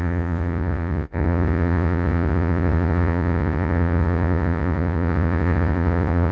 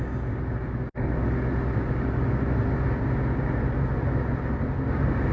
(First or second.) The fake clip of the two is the first